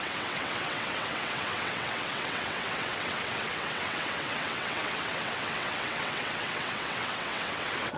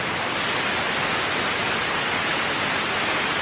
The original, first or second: second